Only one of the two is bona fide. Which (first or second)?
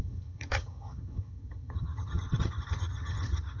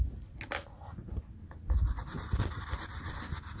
second